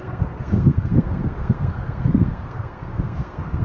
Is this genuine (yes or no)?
no